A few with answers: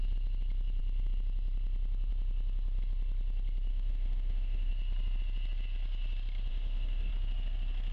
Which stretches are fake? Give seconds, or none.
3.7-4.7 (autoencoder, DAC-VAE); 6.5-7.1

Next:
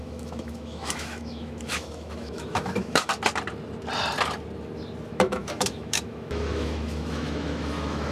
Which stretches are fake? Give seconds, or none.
0.0-3.1 (autoencoder, DAC-VAE); 5.1-8.1

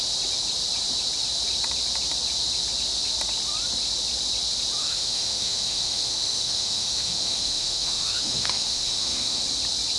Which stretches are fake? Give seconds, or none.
4.8-9.4 (autoencoder, DAC-VAE)